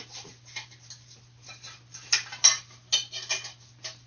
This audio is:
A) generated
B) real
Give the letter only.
B